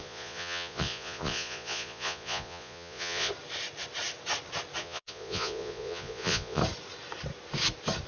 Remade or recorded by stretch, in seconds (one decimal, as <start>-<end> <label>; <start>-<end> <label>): 0.0-3.3 remade; 3.3-4.8 recorded; 4.8-6.6 remade; 6.6-8.1 recorded